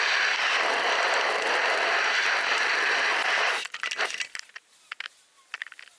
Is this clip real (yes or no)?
yes